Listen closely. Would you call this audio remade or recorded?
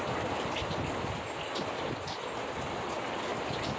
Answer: recorded